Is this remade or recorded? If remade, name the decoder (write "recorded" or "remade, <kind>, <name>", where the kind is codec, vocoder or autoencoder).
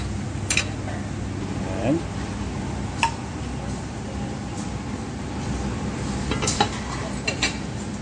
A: recorded